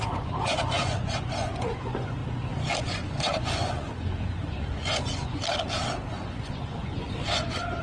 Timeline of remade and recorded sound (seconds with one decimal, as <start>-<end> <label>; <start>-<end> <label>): 0.0-2.2 remade; 2.2-2.8 recorded; 2.8-5.4 remade; 5.4-6.1 recorded; 6.1-7.8 remade